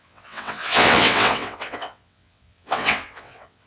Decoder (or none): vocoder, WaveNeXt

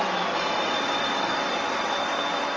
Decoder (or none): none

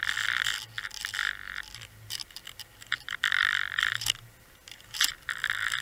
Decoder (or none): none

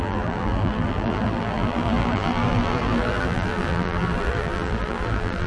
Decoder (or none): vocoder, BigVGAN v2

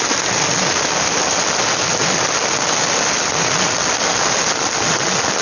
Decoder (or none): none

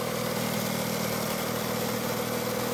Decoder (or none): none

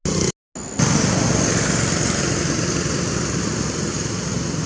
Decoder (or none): none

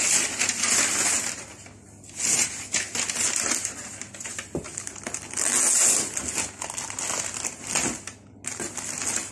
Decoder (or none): none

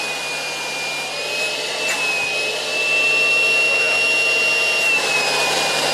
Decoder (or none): none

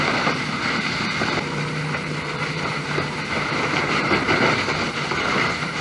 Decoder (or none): vocoder, BigVGAN v2